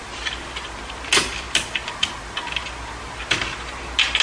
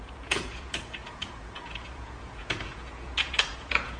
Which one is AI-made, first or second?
second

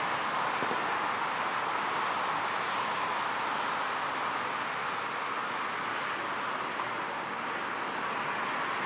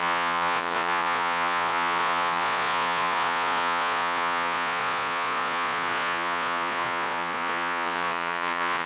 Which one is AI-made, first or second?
second